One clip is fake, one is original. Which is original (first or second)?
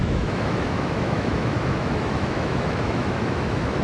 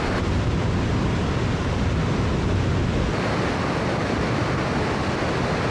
second